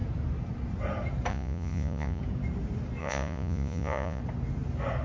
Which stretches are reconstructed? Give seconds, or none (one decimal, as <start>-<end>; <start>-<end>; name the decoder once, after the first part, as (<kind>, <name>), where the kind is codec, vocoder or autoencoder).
1.3-2.2 (vocoder, Vocos); 3.0-4.2